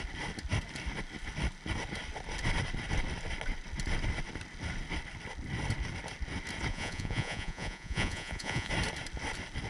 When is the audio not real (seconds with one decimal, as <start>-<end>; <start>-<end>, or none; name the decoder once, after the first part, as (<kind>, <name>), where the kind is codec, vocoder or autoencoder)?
6.7-8.7 (vocoder, Vocos)